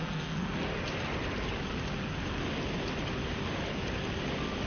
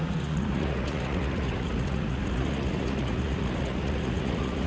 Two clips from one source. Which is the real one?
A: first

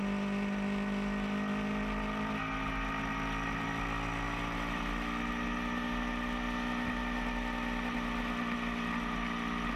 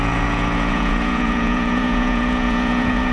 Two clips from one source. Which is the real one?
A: first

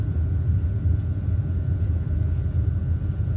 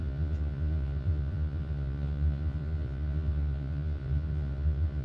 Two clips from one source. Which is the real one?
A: first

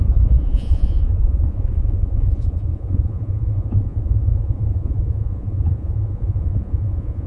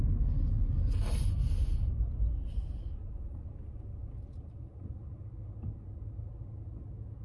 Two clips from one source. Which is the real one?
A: second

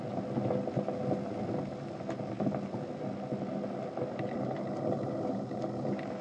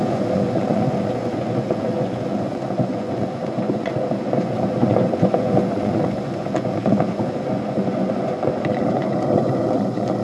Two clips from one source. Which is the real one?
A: first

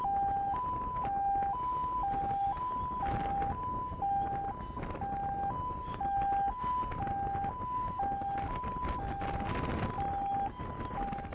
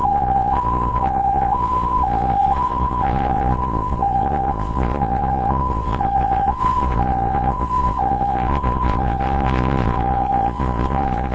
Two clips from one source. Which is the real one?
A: first